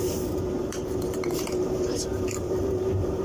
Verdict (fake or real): fake